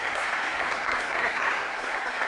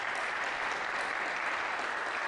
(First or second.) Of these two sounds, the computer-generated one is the first